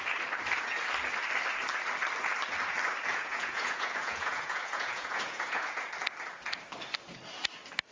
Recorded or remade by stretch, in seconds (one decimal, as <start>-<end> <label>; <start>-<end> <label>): 0.0-3.1 recorded; 3.1-5.9 remade; 5.9-7.9 recorded